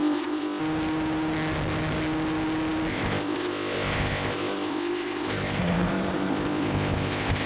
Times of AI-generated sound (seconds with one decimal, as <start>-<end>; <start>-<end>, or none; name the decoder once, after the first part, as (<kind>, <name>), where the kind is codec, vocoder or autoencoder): 0.0-0.6 (codec, ZipCodec); 2.9-7.5